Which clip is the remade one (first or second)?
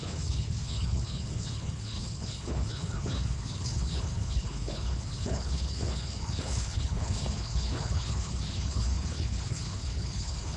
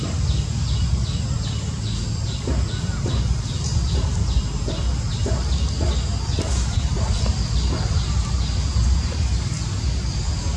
first